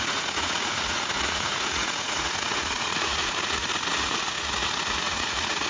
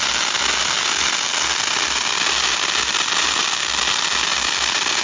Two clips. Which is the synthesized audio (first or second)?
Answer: first